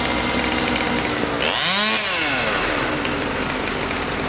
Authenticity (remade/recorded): recorded